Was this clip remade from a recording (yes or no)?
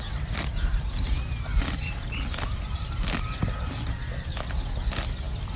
no